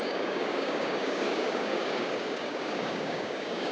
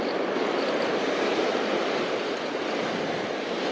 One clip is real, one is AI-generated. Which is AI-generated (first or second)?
first